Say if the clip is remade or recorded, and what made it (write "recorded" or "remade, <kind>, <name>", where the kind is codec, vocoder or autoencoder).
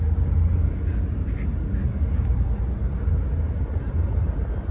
recorded